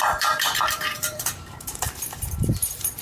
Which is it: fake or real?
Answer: fake